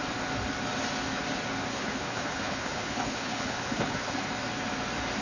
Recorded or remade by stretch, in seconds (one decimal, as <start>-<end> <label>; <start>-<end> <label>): 0.0-1.7 recorded; 1.7-4.3 remade; 4.3-5.2 recorded